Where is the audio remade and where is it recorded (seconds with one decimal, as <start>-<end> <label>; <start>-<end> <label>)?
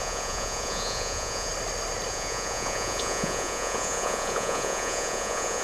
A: 0.0-1.5 remade; 1.5-2.1 recorded; 2.1-5.6 remade